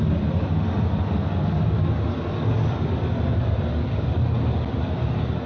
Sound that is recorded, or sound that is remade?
recorded